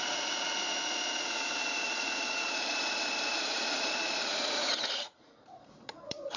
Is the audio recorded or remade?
remade